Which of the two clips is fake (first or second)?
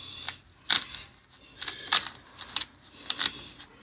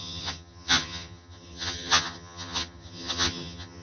second